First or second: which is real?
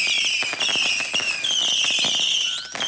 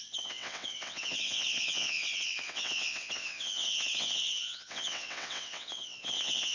first